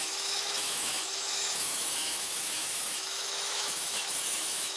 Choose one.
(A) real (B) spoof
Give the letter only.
B